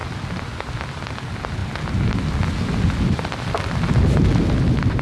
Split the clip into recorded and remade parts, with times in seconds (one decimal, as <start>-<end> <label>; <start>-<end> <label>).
0.0-5.0 recorded